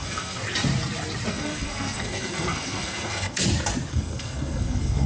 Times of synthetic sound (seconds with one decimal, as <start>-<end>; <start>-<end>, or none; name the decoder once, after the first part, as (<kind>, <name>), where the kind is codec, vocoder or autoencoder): 0.0-0.4 (codec, SNAC); 1.3-3.4; 3.9-5.1